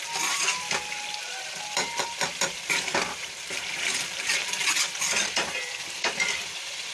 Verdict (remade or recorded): remade